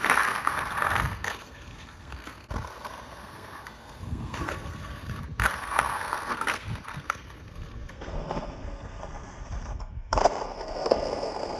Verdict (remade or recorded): remade